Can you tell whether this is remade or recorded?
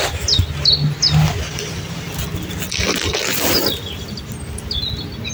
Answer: recorded